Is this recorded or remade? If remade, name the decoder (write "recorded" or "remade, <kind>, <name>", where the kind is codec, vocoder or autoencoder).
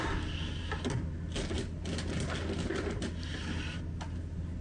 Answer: recorded